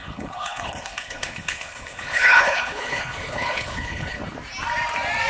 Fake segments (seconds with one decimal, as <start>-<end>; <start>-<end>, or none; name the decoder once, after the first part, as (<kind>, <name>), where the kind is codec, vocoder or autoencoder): 0.0-4.2 (codec, HILCodec)